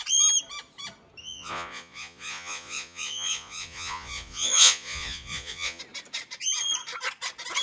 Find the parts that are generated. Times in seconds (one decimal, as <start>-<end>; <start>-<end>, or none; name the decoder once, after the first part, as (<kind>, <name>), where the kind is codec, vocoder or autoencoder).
1.2-5.8 (vocoder, Vocos)